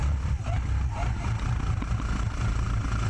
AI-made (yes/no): no